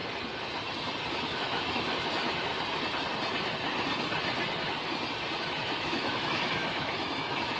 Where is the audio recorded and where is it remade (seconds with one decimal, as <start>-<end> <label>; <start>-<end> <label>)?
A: 0.0-1.1 recorded; 1.1-2.5 remade; 2.5-5.4 recorded; 5.4-7.6 remade